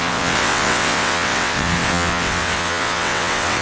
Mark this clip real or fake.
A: fake